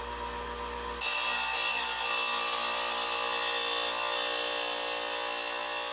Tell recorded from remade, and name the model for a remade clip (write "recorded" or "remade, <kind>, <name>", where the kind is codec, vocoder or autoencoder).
recorded